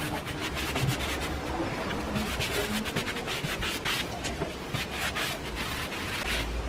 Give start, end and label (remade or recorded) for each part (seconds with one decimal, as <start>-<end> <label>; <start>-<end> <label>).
0.0-6.7 recorded